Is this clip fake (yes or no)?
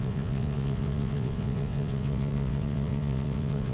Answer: yes